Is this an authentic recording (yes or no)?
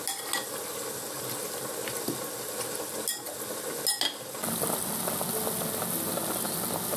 yes